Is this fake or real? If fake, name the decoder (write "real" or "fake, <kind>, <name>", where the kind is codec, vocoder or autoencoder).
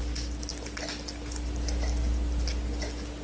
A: real